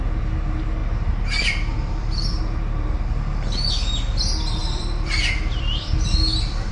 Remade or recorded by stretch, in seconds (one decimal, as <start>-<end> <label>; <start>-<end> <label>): 0.0-0.8 recorded; 0.8-2.4 remade; 2.4-4.6 recorded; 4.6-6.7 remade